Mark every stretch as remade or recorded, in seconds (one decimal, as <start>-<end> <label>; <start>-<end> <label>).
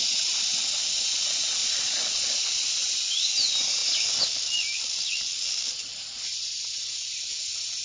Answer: 0.0-1.6 recorded; 1.6-3.2 remade; 3.2-7.8 recorded